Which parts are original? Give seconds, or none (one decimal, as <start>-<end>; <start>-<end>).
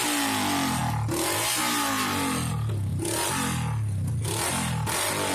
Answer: 0.0-5.3